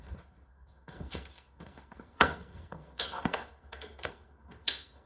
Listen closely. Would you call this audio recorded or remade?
remade